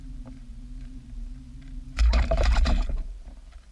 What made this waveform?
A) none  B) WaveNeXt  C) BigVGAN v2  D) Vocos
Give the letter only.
C